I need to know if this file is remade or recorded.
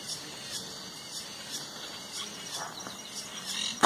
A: recorded